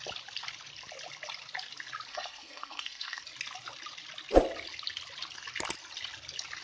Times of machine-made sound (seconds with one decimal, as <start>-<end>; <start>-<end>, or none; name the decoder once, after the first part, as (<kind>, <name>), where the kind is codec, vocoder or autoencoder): 2.1-3.2 (codec, SNAC)